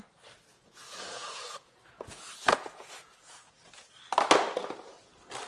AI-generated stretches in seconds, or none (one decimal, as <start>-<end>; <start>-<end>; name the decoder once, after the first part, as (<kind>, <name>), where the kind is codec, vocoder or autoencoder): 0.5-3.7 (vocoder, Vocos)